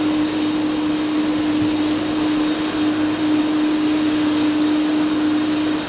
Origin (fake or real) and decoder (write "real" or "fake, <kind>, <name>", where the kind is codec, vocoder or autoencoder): real